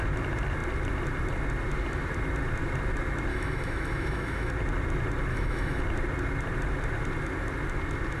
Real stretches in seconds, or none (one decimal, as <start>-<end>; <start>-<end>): 0.0-3.3; 4.5-5.3; 5.8-8.2